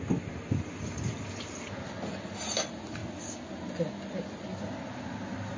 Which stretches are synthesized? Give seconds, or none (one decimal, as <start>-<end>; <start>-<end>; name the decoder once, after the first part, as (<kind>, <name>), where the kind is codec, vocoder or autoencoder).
none